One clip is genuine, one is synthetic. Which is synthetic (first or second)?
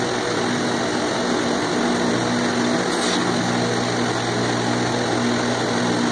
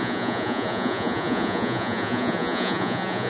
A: second